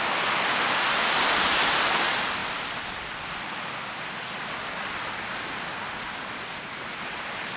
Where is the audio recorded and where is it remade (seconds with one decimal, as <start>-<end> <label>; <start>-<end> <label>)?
0.0-7.6 recorded